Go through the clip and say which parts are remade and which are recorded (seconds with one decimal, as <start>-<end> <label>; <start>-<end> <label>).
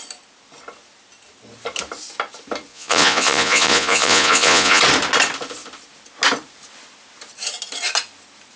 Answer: 0.0-2.7 recorded; 2.7-4.8 remade; 4.8-8.6 recorded